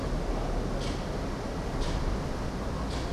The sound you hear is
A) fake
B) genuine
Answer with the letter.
B